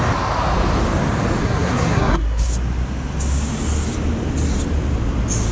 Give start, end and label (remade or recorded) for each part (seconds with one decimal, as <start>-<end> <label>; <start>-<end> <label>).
0.0-1.4 recorded; 1.4-2.5 remade; 2.5-5.5 recorded